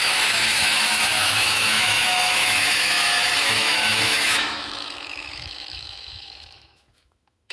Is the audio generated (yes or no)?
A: yes